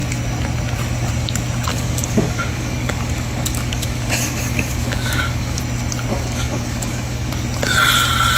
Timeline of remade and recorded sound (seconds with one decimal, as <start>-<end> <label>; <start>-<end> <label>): 0.0-1.7 recorded; 1.7-5.6 remade; 5.6-6.1 recorded; 6.1-7.3 remade; 7.3-8.4 recorded